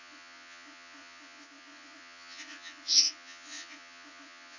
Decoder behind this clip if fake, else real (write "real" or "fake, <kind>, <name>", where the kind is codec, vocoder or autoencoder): fake, vocoder, Vocos